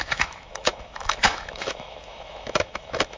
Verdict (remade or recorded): remade